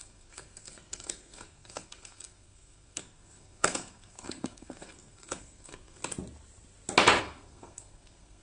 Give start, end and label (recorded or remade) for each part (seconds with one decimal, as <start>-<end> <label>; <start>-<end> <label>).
0.0-6.0 remade; 6.0-7.2 recorded; 7.2-8.4 remade